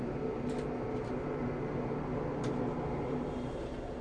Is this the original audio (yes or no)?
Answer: no